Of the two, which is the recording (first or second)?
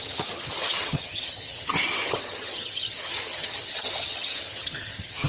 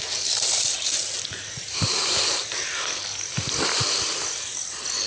second